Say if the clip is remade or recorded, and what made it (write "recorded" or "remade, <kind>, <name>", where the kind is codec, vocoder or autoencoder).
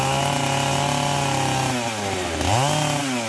recorded